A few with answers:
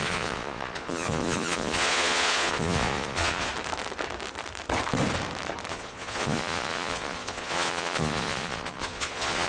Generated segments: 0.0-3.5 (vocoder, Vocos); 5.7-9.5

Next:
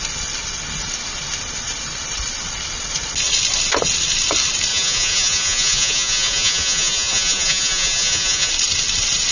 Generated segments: 4.7-8.5 (vocoder, Vocos)

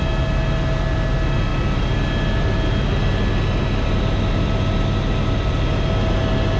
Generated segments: none

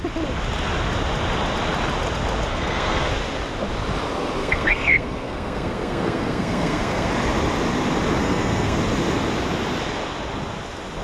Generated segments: 2.5-3.1 (codec, SNAC); 4.4-7.1; 8.2-8.8

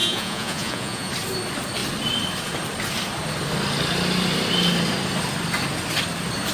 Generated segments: 0.0-1.1 (vocoder, Vocos)

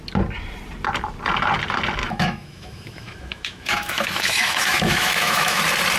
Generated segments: 2.0-5.6 (autoencoder, DAC-VAE)